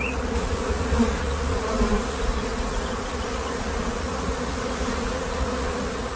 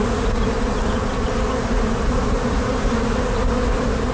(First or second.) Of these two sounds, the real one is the second